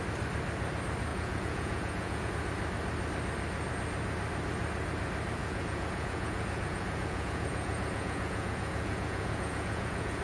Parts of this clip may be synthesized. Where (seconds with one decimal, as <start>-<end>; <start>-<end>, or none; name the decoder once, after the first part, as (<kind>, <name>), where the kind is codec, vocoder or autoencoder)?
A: 1.1-2.3 (vocoder, Vocos); 5.4-10.2

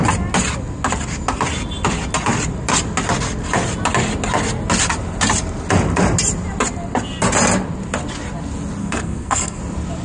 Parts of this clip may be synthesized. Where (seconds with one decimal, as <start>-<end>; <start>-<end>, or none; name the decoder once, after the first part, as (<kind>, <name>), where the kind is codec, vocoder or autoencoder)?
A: 8.8-9.6 (codec, SNAC)

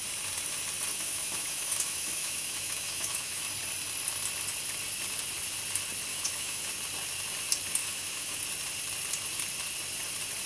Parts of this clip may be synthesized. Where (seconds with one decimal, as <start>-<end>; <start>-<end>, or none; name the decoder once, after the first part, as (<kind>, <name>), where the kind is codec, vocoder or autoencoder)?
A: 0.9-3.4 (autoencoder, DAC-VAE); 6.1-6.7; 7.8-8.4

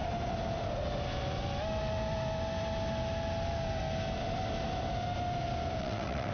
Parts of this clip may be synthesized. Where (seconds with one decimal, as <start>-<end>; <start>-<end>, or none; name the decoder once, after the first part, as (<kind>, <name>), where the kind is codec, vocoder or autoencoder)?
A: 5.8-6.3 (vocoder, WaveNeXt)